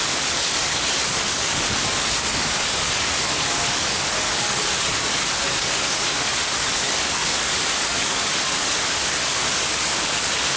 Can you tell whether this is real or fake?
fake